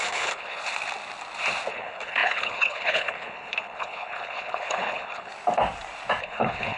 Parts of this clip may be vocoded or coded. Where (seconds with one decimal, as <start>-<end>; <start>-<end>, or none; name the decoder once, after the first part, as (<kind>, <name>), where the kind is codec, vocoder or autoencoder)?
0.0-0.6 (codec, HILCodec); 1.7-5.3; 6.2-6.8